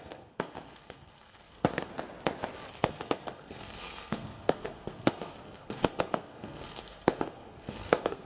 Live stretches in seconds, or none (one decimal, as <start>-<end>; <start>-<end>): 1.9-2.7